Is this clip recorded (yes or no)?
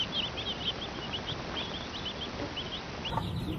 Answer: yes